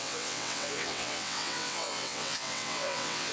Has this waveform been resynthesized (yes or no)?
yes